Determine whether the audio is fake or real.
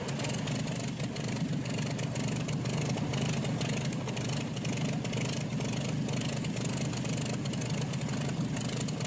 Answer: real